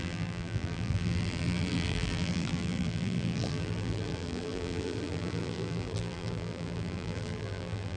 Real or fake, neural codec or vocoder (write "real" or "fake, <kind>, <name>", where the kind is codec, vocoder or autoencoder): fake, vocoder, BigVGAN v2